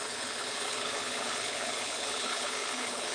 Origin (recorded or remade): remade